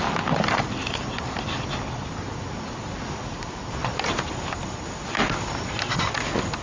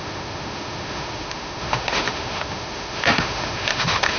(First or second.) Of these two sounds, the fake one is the second